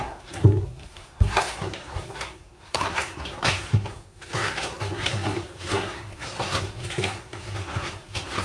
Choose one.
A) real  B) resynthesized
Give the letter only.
B